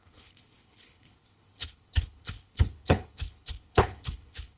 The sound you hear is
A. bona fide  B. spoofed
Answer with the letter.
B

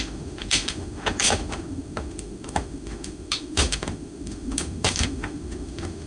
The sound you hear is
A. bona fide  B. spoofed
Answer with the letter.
B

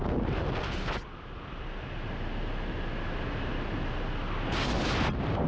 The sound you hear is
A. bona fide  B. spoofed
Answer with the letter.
A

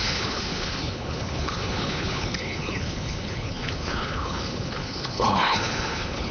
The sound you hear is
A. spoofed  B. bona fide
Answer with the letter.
A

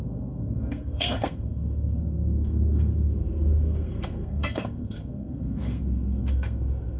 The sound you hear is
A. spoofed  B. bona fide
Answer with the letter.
A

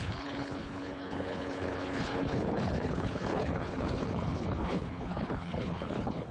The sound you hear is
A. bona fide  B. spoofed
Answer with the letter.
B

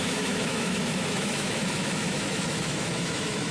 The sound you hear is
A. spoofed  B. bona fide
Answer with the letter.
A